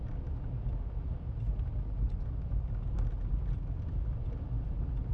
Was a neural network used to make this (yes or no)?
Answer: no